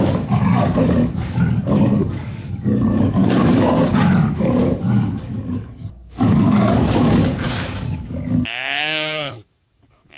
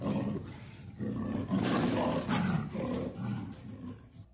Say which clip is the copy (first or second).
first